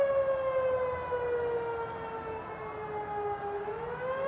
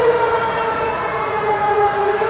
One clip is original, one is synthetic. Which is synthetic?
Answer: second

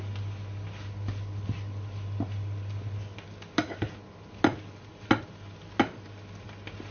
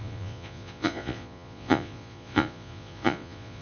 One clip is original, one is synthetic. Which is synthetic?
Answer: second